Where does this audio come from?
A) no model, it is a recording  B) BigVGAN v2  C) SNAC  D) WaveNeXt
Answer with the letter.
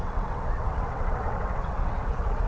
D